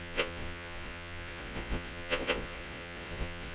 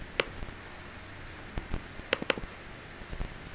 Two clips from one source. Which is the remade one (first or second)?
first